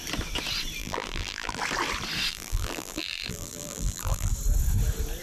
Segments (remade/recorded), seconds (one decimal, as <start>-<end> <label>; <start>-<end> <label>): 0.0-0.8 recorded; 0.8-1.6 remade; 1.6-2.3 recorded; 2.3-4.3 remade; 4.3-5.2 recorded

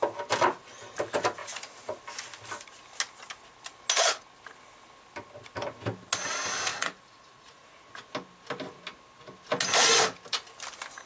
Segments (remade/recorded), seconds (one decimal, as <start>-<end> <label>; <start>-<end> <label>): 0.0-1.4 recorded; 1.4-2.0 remade; 2.0-6.7 recorded; 6.7-7.9 remade; 7.9-11.1 recorded